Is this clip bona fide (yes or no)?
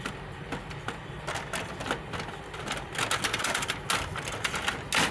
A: yes